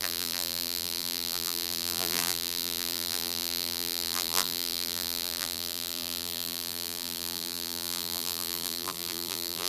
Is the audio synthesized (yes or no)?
yes